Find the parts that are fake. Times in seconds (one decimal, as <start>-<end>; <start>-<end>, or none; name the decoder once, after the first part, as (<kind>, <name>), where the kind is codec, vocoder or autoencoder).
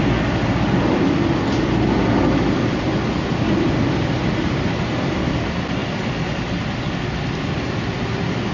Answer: none